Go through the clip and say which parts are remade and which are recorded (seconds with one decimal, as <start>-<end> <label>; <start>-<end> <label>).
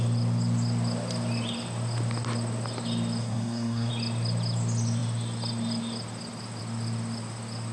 0.0-3.2 recorded; 3.2-3.9 remade; 3.9-7.7 recorded